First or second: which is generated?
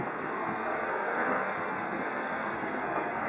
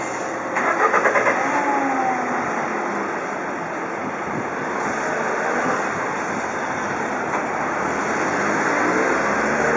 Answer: first